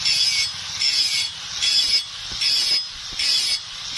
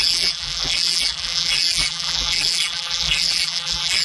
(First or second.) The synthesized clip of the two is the second